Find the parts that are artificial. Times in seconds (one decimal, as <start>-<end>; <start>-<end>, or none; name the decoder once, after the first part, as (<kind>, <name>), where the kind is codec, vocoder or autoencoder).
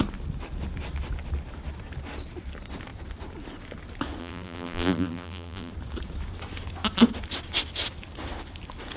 4.2-5.7 (vocoder, BigVGAN v2)